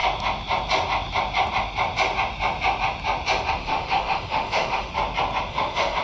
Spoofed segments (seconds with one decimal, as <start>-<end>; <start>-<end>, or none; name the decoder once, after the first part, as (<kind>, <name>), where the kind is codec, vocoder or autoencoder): 3.6-4.9 (autoencoder, DAC-VAE); 5.5-6.0